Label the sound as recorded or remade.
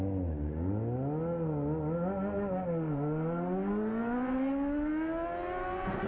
recorded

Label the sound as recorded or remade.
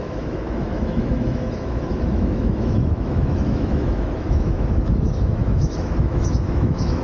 remade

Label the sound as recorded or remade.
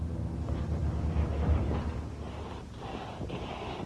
recorded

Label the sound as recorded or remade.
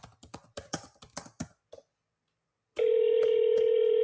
remade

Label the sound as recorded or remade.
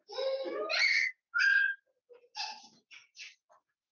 recorded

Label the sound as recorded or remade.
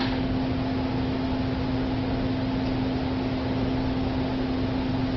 recorded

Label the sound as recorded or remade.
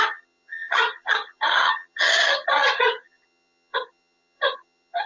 remade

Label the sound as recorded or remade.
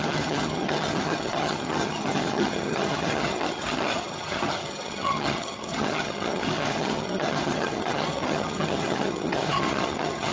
remade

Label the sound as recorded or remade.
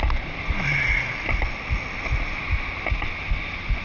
recorded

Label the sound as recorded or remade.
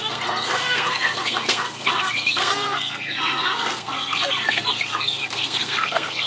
remade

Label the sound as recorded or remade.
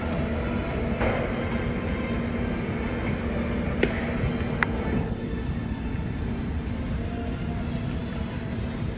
recorded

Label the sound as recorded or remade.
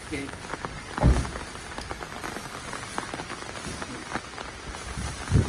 recorded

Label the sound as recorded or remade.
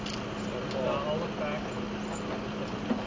recorded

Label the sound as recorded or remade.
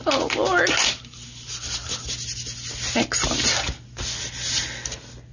recorded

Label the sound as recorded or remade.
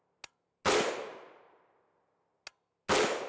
recorded